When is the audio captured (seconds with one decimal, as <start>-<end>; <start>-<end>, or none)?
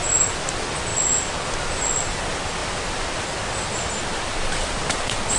0.0-5.4